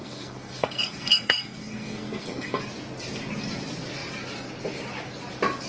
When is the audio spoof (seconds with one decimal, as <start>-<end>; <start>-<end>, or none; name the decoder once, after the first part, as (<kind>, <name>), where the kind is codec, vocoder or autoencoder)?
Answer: 0.0-2.6 (codec, SNAC)

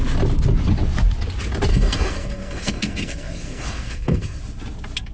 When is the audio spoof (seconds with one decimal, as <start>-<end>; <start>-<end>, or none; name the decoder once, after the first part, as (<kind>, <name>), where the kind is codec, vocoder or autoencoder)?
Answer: 1.7-4.4 (codec, SNAC)